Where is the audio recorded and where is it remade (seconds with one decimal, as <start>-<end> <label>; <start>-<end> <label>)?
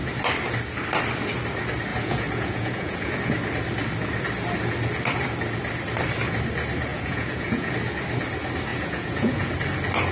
0.0-1.9 recorded; 1.9-3.2 remade; 3.2-6.9 recorded; 6.9-7.7 remade; 7.7-8.7 recorded; 8.7-9.5 remade; 9.5-10.1 recorded